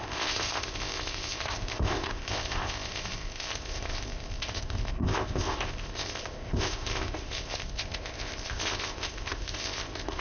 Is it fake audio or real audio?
fake